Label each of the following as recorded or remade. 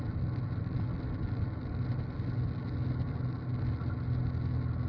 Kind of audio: recorded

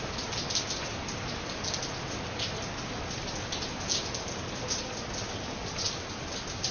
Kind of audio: recorded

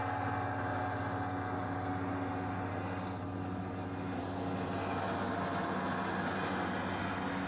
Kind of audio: recorded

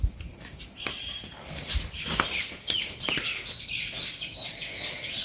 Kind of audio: recorded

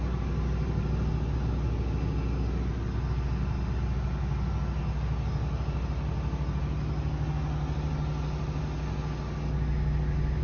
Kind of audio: recorded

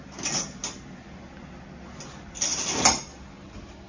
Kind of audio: recorded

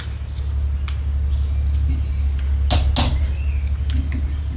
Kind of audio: recorded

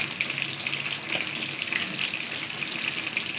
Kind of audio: recorded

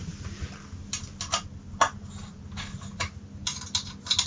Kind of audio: recorded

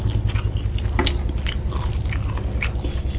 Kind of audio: recorded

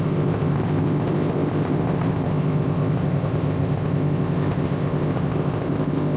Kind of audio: remade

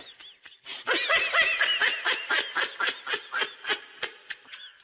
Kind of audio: recorded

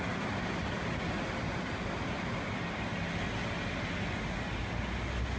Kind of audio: recorded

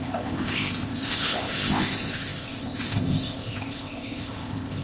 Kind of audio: remade